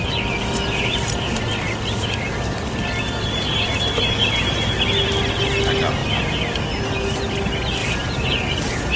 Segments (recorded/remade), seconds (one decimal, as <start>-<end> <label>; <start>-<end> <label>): 0.0-3.7 recorded; 3.7-4.6 remade; 4.6-6.0 recorded; 6.0-6.6 remade; 6.6-7.8 recorded; 7.8-9.0 remade